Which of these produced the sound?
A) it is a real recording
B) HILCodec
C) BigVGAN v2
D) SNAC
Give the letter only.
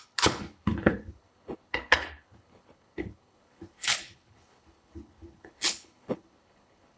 B